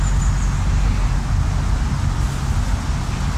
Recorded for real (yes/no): yes